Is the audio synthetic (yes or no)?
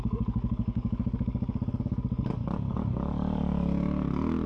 yes